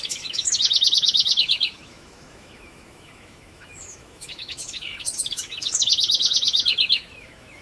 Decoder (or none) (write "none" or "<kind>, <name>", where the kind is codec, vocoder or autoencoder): autoencoder, DAC-VAE